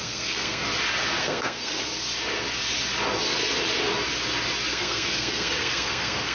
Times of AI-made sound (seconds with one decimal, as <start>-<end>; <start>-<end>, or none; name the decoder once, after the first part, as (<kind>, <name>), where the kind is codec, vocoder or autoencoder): 0.0-0.6 (codec, SNAC); 1.2-1.9; 4.7-6.3